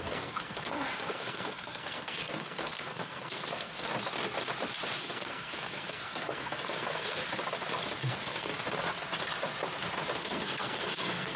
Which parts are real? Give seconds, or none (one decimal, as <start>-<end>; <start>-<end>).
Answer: 3.9-5.0; 7.2-8.0; 8.5-10.2